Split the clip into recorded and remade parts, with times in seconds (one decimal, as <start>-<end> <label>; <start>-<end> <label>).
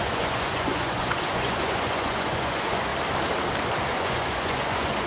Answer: 0.0-2.9 remade; 2.9-3.9 recorded; 3.9-5.1 remade